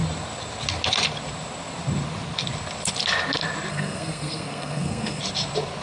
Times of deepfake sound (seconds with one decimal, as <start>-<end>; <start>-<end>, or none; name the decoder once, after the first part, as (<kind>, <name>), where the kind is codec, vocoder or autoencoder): 3.7-5.2 (codec, SNAC)